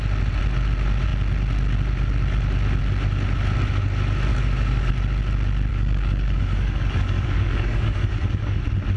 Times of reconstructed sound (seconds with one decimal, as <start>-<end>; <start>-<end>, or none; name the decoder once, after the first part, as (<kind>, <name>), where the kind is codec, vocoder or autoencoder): 4.3-4.9 (codec, DAC); 5.7-8.6